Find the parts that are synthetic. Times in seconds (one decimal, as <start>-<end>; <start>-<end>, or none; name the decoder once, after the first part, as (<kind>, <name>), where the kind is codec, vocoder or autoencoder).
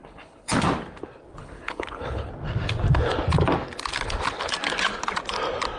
0.0-0.6 (codec, HILCodec); 1.4-2.3